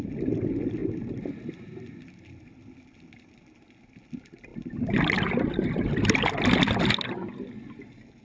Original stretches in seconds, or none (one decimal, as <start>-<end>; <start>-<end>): 0.0-8.2